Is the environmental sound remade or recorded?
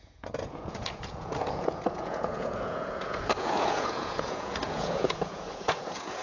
remade